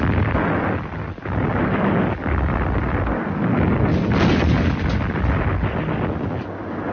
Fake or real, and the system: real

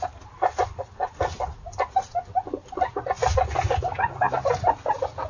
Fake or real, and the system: real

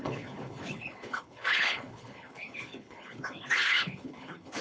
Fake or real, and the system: fake, codec, HILCodec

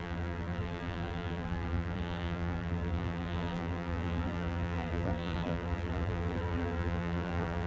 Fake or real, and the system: fake, vocoder, BigVGAN v2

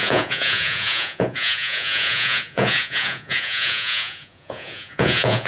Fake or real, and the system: fake, vocoder, Vocos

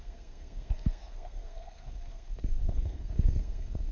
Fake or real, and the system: fake, codec, SNAC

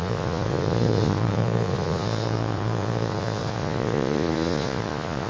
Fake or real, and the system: fake, vocoder, Vocos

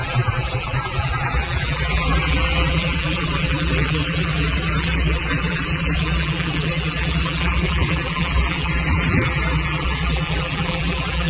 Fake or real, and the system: fake, vocoder, BigVGAN v2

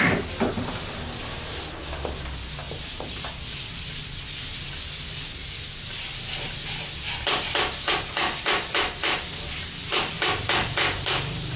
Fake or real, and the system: real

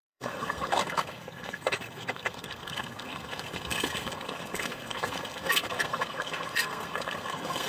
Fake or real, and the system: fake, codec, SNAC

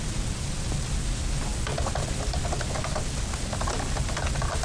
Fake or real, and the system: real